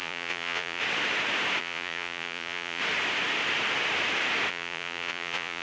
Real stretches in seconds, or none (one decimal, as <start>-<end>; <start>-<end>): 0.8-1.6; 2.8-4.5